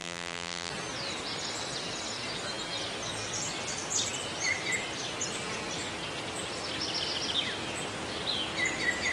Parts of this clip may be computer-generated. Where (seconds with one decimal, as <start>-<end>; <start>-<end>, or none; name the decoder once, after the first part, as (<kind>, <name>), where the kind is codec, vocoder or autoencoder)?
0.0-0.7 (vocoder, BigVGAN v2)